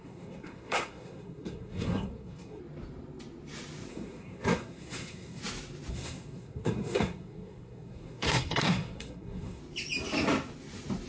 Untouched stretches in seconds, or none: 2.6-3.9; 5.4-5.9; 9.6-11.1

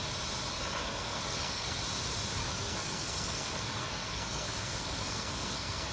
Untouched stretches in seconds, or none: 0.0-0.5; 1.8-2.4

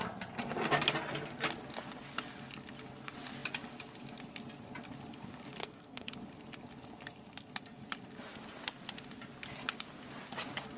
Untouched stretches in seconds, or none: 0.0-5.6; 6.1-10.8

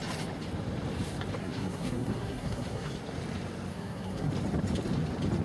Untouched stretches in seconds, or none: 0.0-1.4; 2.9-3.7; 4.3-5.4